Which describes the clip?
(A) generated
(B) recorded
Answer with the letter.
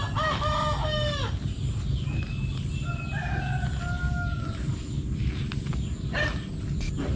B